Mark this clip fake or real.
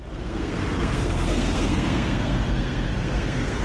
fake